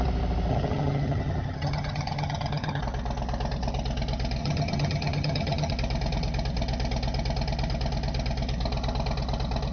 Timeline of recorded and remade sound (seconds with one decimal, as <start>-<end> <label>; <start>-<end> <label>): 0.0-0.5 recorded; 0.5-2.8 remade; 2.8-4.4 recorded; 4.4-5.7 remade; 5.7-9.7 recorded